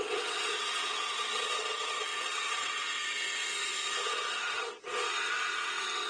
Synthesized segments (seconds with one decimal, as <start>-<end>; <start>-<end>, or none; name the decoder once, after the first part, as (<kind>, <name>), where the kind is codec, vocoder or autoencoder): 0.0-6.1 (vocoder, WaveNeXt)